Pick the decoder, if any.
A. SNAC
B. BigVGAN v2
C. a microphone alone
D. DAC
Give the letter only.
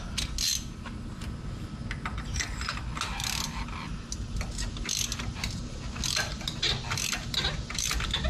C